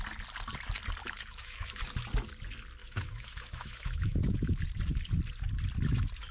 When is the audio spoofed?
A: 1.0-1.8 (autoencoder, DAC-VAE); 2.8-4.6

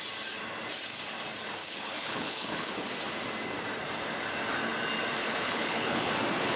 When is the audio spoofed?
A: 1.6-2.7 (codec, HILCodec); 5.2-6.1